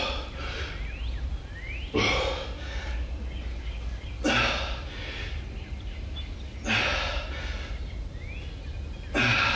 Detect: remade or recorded recorded